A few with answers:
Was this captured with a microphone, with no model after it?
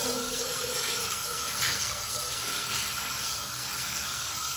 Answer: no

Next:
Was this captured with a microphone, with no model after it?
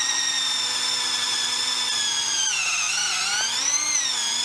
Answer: yes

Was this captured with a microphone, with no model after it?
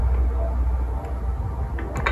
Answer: yes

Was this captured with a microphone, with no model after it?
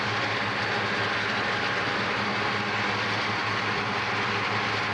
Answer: yes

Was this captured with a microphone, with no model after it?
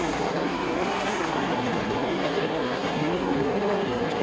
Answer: no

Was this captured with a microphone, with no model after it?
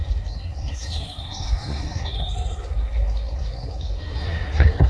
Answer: no